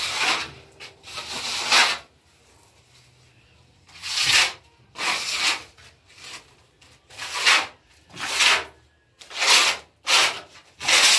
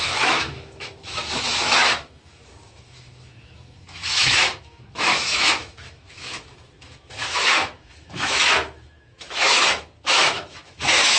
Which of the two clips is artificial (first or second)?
second